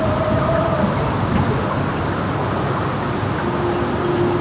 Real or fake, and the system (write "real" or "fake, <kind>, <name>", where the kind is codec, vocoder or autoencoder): real